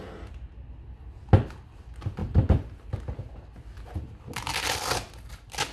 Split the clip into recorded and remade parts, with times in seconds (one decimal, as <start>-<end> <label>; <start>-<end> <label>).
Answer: 0.0-5.7 recorded